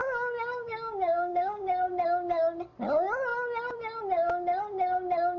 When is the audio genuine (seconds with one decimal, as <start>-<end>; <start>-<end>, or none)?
1.9-5.4